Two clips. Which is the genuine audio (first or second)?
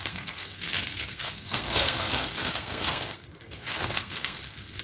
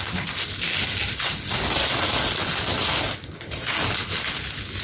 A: second